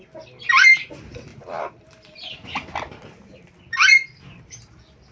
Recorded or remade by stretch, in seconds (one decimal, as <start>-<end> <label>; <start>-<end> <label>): 0.0-5.1 recorded